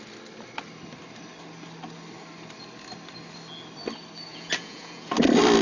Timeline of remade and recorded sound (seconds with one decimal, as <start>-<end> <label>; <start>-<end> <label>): 0.0-4.3 recorded; 4.3-5.1 remade; 5.1-5.6 recorded